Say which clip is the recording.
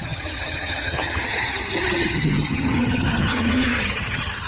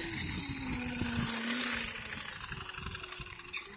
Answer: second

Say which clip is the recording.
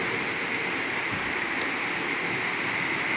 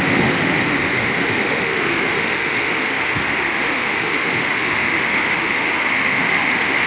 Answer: first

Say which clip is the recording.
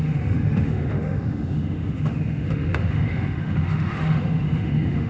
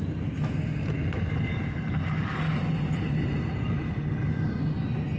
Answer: second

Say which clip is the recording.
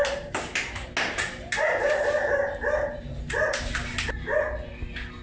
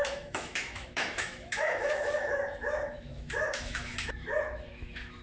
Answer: first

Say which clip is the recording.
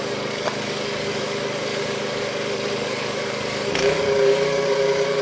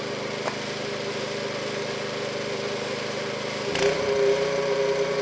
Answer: second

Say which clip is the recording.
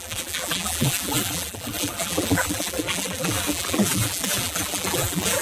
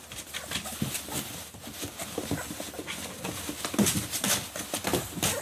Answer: second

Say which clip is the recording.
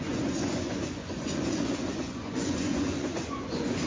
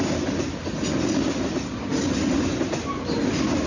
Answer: second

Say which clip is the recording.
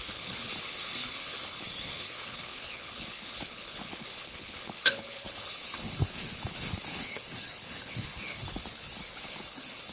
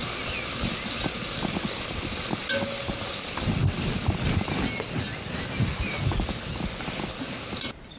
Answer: second